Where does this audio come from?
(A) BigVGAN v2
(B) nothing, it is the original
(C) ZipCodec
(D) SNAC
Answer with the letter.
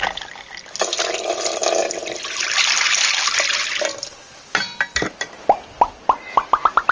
B